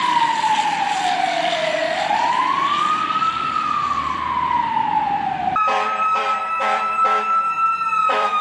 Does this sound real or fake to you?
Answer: fake